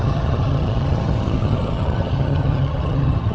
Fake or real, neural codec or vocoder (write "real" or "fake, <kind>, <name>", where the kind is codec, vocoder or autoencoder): fake, vocoder, HiFi-GAN